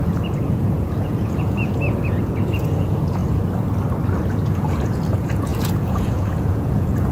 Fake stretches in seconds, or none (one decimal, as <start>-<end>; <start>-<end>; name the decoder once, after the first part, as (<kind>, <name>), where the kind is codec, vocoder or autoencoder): 0.0-3.2 (vocoder, Vocos); 4.3-7.1